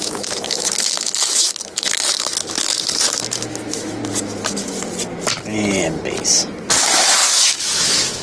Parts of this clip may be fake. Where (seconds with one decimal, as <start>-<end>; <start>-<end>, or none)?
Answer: 0.0-4.0; 6.7-8.2